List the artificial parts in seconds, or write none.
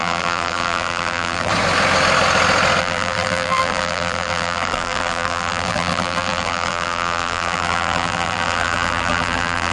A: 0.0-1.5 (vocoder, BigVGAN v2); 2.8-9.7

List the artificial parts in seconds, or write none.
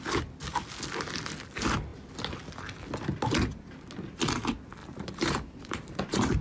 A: 4.8-6.4 (vocoder, BigVGAN v2)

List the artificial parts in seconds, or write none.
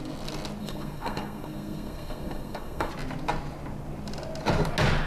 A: 0.6-2.9 (codec, SNAC)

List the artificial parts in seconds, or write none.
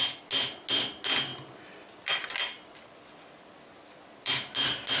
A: none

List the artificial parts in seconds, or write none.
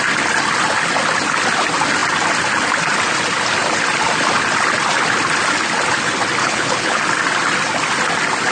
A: 6.4-7.0 (codec, HILCodec)